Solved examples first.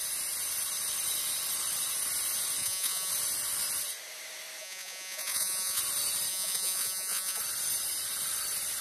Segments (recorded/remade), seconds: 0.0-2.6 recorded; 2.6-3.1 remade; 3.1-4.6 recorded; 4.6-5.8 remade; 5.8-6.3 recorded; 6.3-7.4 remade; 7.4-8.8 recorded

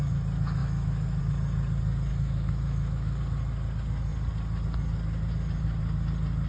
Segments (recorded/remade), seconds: 0.0-0.6 recorded; 0.6-1.2 remade; 1.2-2.1 recorded; 2.1-3.2 remade; 3.2-6.5 recorded